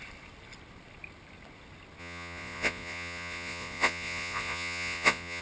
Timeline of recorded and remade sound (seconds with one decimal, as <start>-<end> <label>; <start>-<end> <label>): 0.0-2.0 recorded; 2.0-5.4 remade